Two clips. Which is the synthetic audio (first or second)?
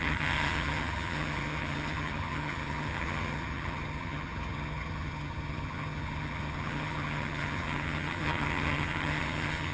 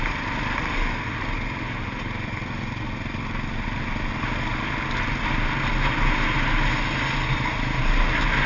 first